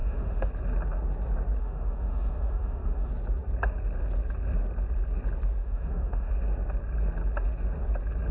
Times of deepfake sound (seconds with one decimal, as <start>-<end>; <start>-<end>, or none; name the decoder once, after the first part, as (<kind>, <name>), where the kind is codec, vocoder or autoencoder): 0.0-0.5 (autoencoder, DAC-VAE); 1.6-3.1; 5.6-6.3